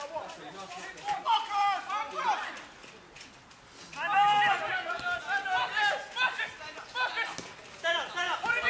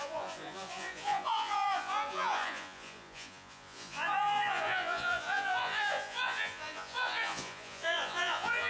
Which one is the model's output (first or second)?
second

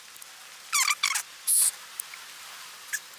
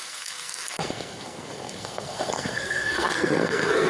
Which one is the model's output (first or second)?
second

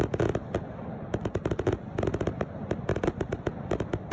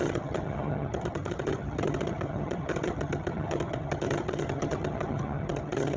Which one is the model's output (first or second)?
second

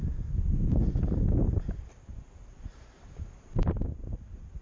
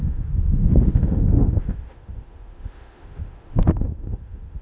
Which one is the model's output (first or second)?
second